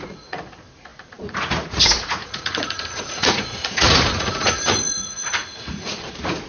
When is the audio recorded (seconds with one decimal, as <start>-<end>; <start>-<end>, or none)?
none